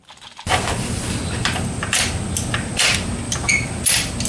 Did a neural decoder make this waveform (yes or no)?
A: no